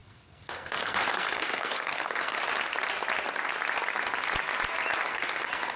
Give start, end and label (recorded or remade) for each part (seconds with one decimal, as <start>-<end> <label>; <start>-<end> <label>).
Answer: 0.0-2.4 remade; 2.4-5.1 recorded; 5.1-5.8 remade